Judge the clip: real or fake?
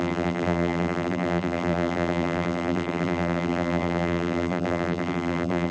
fake